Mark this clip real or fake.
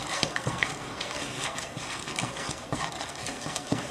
fake